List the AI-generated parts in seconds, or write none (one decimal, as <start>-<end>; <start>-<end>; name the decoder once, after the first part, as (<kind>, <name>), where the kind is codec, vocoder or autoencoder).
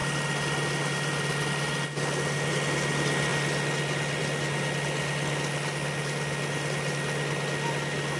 none